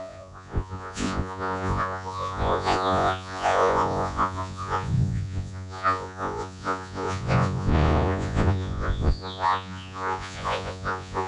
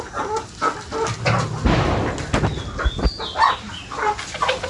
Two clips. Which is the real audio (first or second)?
second